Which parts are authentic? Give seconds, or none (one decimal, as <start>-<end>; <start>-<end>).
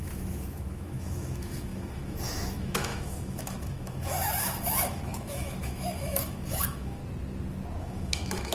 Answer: 7.0-7.8